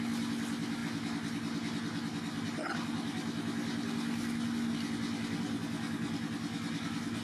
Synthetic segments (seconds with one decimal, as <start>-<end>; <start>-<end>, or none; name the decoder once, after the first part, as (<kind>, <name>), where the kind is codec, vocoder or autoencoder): none